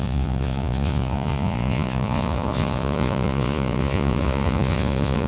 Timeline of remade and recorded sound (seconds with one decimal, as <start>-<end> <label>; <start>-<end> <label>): 0.0-5.3 remade